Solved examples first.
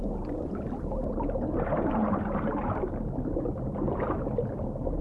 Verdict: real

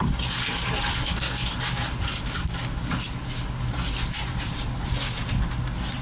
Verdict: real